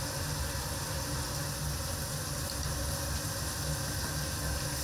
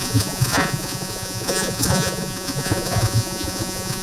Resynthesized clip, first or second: second